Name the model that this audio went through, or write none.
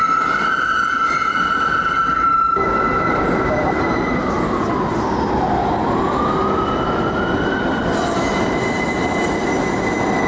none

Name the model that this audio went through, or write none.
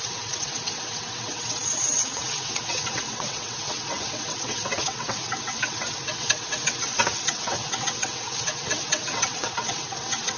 vocoder, WaveNeXt